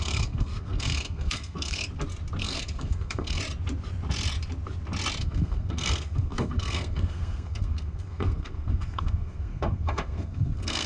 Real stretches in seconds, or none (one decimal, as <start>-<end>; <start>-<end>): 1.8-2.4; 3.4-5.2